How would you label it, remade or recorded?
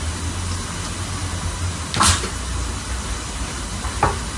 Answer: recorded